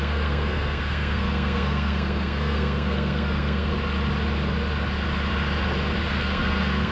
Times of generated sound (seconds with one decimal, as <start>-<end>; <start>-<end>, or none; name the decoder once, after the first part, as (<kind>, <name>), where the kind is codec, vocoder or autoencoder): 0.0-3.7 (codec, SNAC); 6.1-6.9